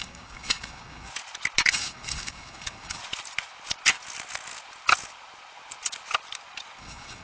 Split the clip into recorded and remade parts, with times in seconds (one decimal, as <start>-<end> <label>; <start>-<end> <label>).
0.0-1.1 remade; 1.1-1.7 recorded; 1.7-3.0 remade; 3.0-6.8 recorded; 6.8-7.2 remade